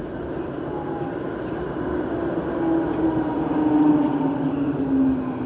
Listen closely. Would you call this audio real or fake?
real